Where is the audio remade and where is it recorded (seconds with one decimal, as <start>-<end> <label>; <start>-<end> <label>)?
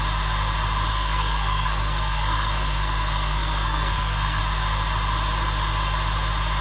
0.0-0.9 recorded; 0.9-4.4 remade; 4.4-6.6 recorded